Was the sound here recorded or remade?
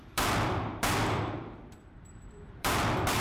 remade